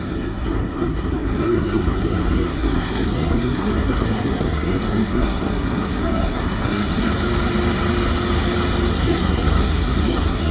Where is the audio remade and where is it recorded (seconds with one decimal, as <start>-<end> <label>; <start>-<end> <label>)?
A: 0.0-7.1 remade; 7.1-8.9 recorded; 8.9-10.5 remade